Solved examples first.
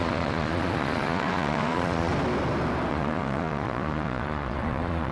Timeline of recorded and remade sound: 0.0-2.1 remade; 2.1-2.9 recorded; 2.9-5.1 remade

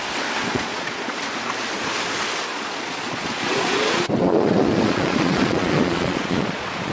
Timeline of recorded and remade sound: 0.0-0.4 recorded; 0.4-1.2 remade; 1.2-2.5 recorded; 2.5-6.9 remade

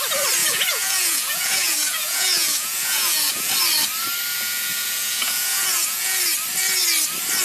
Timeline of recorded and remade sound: 0.0-0.4 recorded; 0.4-3.5 remade; 3.5-4.3 recorded; 4.3-6.2 remade; 6.2-7.4 recorded

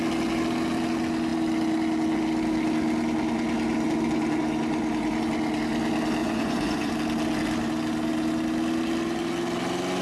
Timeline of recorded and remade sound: 0.0-6.2 recorded; 6.2-6.9 remade; 6.9-10.0 recorded

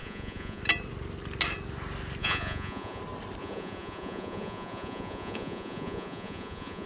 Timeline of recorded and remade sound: 0.0-0.6 remade; 0.6-2.2 recorded; 2.2-3.0 remade; 3.0-3.4 recorded; 3.4-6.9 remade